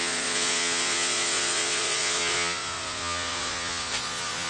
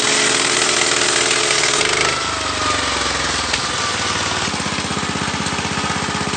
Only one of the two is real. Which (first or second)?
second